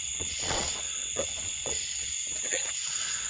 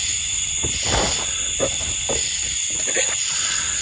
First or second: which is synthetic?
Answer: first